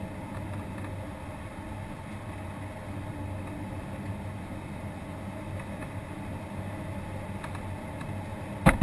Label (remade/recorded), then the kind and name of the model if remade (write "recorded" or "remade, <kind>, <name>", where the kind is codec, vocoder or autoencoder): recorded